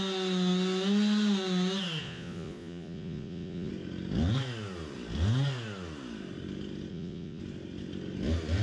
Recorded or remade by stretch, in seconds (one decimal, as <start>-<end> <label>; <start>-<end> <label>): 0.0-2.0 recorded; 2.0-3.7 remade; 3.7-6.9 recorded; 6.9-7.4 remade; 7.4-8.6 recorded

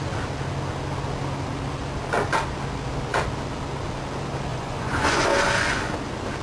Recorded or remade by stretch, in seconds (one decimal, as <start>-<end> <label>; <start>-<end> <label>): 0.0-4.5 recorded; 4.5-5.9 remade; 5.9-6.4 recorded

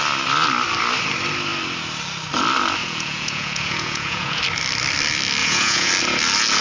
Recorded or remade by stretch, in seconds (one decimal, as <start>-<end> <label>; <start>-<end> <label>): 0.0-2.8 recorded; 2.8-4.4 remade; 4.4-5.4 recorded; 5.4-5.9 remade; 5.9-6.6 recorded

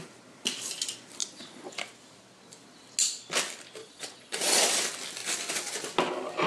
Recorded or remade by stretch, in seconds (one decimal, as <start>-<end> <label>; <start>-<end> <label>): 0.0-1.2 recorded; 1.2-1.7 remade; 1.7-3.8 recorded; 3.8-4.6 remade; 4.6-6.5 recorded

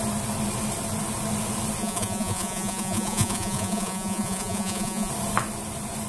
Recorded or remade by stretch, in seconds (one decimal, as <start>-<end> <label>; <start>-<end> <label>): 0.0-1.8 recorded; 1.8-5.1 remade; 5.1-6.1 recorded